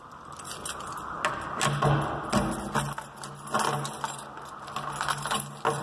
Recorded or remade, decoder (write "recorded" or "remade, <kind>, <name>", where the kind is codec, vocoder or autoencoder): recorded